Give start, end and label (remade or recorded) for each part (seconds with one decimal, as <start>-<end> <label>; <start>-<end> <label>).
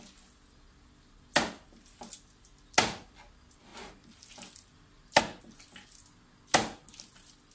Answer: 0.0-3.7 recorded; 3.7-5.2 remade; 5.2-7.5 recorded